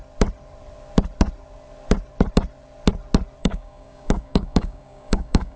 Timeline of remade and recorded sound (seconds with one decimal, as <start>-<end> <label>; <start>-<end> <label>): 0.0-3.4 recorded; 3.4-5.6 remade